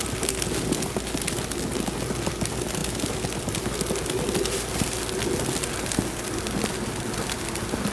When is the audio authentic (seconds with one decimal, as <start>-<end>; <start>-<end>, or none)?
0.0-7.9